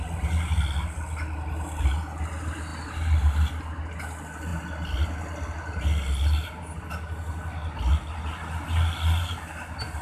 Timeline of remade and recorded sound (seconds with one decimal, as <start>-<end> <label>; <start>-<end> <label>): 0.0-10.0 recorded